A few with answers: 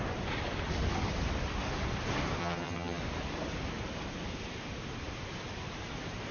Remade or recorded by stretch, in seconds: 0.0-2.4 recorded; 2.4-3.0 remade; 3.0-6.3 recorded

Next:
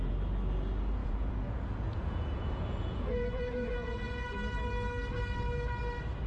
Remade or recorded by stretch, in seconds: 0.0-1.0 recorded; 1.0-4.3 remade; 4.3-6.3 recorded

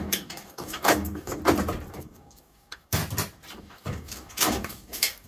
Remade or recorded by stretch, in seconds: 0.0-1.4 remade; 1.4-1.9 recorded; 1.9-3.0 remade; 3.0-3.6 recorded; 3.6-5.3 remade

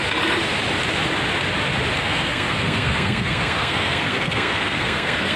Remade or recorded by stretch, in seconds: 0.0-2.0 recorded; 2.0-5.4 remade

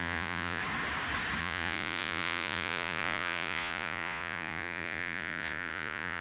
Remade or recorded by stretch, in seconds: 0.0-0.6 remade; 0.6-1.4 recorded; 1.4-6.2 remade

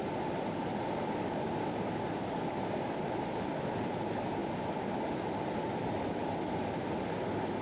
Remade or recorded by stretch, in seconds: 0.0-7.6 recorded